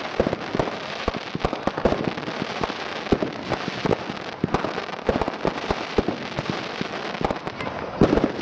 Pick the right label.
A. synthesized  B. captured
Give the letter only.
B